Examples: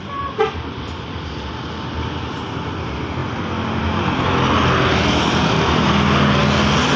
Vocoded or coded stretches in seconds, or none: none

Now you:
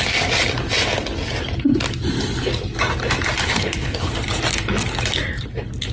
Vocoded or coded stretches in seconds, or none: 3.5-4.1 (codec, HILCodec)

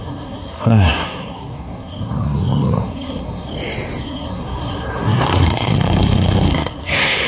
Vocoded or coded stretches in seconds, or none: 0.0-3.5 (codec, SNAC); 4.0-7.3

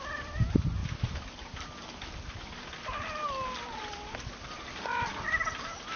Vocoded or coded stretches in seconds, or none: none

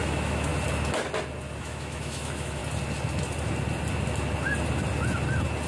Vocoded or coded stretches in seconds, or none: 0.0-0.5 (autoencoder, DAC-VAE); 1.6-2.6

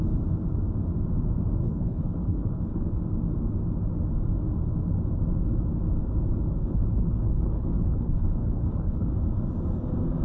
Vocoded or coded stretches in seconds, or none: 1.6-3.0 (codec, HILCodec); 6.6-9.1

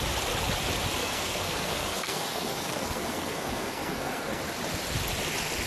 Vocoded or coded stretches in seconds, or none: 1.0-4.4 (codec, SNAC)

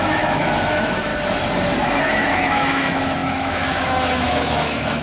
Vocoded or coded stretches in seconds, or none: 0.0-1.1 (autoencoder, DAC-VAE); 2.0-5.0